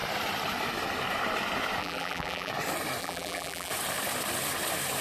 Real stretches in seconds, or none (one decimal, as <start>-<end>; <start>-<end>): 0.0-1.8; 2.5-3.0; 3.7-5.0